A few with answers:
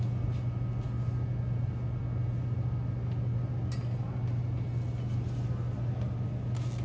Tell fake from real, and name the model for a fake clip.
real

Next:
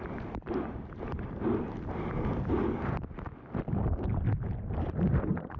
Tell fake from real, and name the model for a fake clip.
real